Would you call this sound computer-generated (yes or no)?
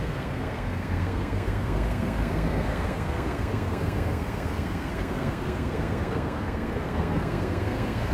yes